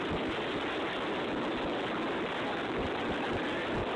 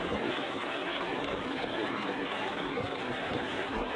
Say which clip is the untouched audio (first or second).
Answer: first